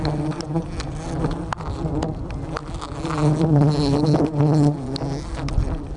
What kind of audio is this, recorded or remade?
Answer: recorded